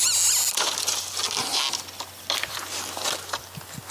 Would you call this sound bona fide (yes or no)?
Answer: yes